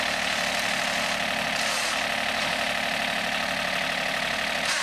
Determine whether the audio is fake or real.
real